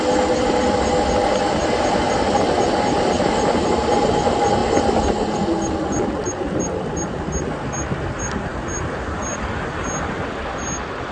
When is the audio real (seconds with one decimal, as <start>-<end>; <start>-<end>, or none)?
0.0-11.1